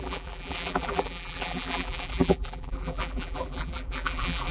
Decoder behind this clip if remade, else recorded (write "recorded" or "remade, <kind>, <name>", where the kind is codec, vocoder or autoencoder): remade, vocoder, BigVGAN v2